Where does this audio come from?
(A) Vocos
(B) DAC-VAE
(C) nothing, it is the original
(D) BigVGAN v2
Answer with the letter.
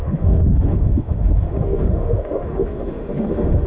B